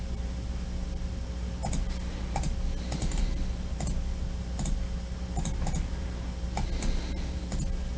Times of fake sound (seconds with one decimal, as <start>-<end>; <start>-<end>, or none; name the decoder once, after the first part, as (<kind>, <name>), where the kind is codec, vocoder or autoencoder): none